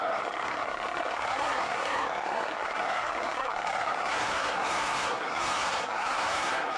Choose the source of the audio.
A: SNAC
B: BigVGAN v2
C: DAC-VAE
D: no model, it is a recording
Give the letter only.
A